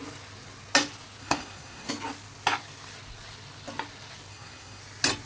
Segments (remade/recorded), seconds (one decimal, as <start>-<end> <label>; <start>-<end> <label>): 0.0-1.2 recorded; 1.2-1.9 remade; 1.9-4.3 recorded; 4.3-4.8 remade; 4.8-5.3 recorded